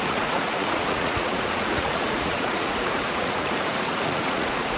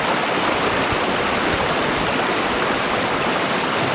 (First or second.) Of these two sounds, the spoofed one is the first